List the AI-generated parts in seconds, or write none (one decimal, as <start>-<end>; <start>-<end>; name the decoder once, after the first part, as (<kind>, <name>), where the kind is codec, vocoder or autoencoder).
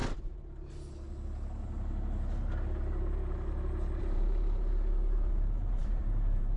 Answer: 4.0-6.6 (vocoder, BigVGAN v2)